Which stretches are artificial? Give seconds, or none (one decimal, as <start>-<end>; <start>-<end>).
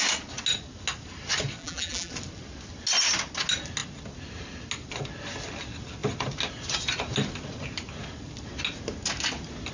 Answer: 1.6-2.1